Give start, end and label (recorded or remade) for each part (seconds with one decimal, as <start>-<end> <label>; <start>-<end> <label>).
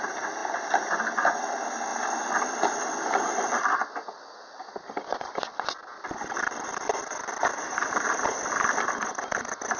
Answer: 0.0-9.8 recorded